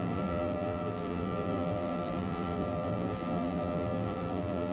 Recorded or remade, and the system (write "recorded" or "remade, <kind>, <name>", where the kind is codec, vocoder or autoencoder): remade, vocoder, BigVGAN v2